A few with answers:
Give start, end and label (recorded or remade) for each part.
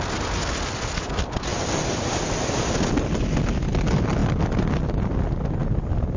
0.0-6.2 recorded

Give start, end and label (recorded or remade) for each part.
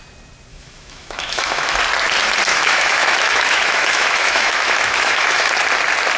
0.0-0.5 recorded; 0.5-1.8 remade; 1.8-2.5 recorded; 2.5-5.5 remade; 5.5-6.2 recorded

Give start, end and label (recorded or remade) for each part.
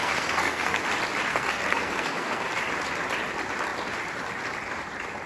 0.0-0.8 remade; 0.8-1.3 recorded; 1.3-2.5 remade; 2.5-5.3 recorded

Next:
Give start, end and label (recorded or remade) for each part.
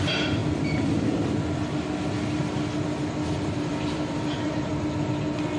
0.0-0.4 remade; 0.4-3.3 recorded; 3.3-4.7 remade; 4.7-5.6 recorded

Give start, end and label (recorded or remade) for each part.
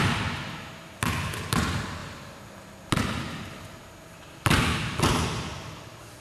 0.0-6.2 recorded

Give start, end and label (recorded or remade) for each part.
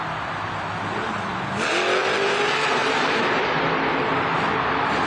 0.0-2.0 recorded; 2.0-3.5 remade; 3.5-5.1 recorded